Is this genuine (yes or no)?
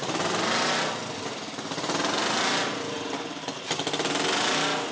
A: yes